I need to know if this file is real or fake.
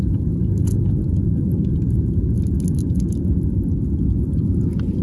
real